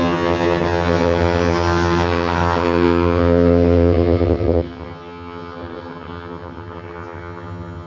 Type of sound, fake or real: fake